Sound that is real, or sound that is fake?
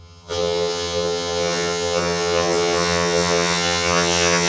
fake